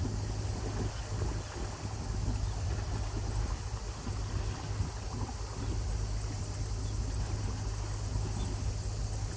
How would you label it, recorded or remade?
recorded